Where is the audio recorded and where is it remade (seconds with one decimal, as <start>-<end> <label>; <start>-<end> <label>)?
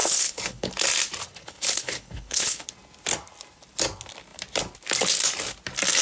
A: 0.0-0.7 remade; 0.7-1.4 recorded; 1.4-2.7 remade; 2.7-6.0 recorded